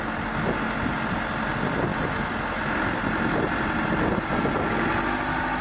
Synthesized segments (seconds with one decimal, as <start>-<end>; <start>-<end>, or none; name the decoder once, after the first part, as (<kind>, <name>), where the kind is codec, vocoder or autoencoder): none